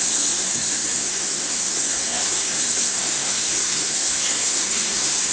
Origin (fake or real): fake